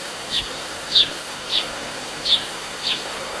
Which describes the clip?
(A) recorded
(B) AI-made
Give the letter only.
B